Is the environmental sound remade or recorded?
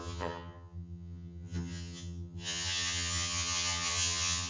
remade